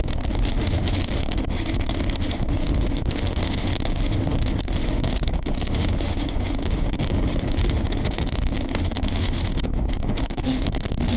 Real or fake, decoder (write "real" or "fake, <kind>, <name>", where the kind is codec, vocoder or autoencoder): fake, autoencoder, DAC-VAE